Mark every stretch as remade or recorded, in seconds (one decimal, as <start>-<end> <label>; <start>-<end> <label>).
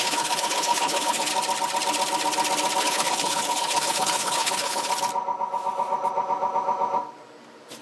0.0-1.3 remade; 1.3-2.8 recorded; 2.8-4.9 remade; 4.9-7.8 recorded